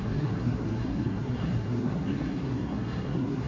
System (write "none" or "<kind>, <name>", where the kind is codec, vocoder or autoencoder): codec, SNAC